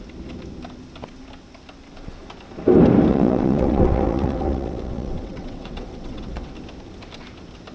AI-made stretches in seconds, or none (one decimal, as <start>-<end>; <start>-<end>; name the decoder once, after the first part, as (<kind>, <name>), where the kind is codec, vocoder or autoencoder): 3.1-6.5 (vocoder, WaveNeXt)